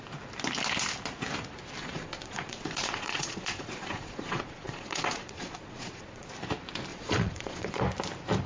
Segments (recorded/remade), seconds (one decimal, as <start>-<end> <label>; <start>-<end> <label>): 0.0-1.8 recorded; 1.8-6.3 remade; 6.3-6.9 recorded; 6.9-7.8 remade; 7.8-8.5 recorded